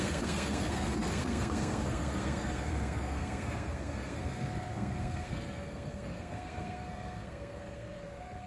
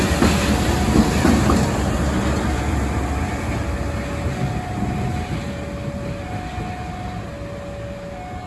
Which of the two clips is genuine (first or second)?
second